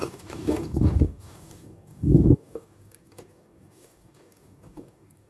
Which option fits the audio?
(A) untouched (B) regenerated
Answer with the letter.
B